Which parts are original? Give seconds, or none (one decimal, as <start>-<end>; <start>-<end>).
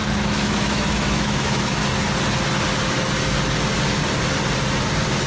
1.8-5.3